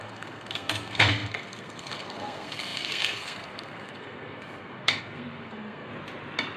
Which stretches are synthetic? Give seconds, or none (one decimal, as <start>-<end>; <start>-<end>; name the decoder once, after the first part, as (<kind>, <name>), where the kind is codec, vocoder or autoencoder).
0.0-5.9 (codec, SNAC)